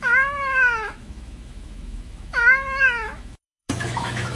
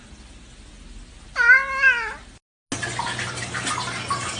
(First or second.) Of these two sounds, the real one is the second